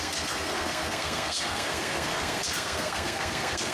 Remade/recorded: remade